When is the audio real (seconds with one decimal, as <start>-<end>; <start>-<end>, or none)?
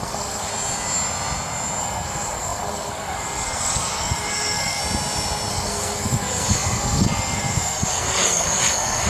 0.5-1.8; 4.8-5.5